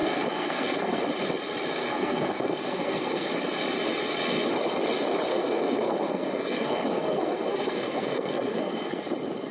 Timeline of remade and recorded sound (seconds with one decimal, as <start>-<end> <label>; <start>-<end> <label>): 0.0-1.0 remade; 1.0-1.7 recorded; 1.7-3.3 remade; 3.3-5.3 recorded; 5.3-9.0 remade; 9.0-9.5 recorded